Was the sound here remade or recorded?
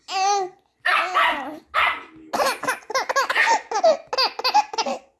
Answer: recorded